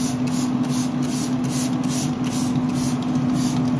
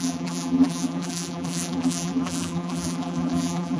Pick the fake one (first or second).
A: second